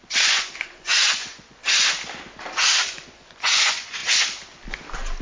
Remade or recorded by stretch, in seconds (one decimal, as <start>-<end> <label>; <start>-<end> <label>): 0.0-1.6 remade; 1.6-2.8 recorded; 2.8-4.0 remade; 4.0-5.2 recorded